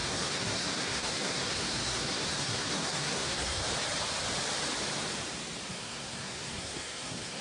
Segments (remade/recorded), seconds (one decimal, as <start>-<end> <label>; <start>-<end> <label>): 0.0-3.6 remade; 3.6-5.7 recorded; 5.7-7.4 remade